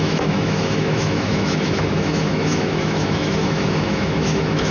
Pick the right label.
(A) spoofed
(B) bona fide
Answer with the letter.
A